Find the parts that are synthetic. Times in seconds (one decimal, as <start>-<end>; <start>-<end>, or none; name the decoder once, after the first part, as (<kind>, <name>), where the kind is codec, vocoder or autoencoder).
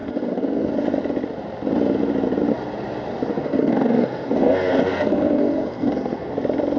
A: 0.0-0.7 (codec, SNAC); 3.3-6.3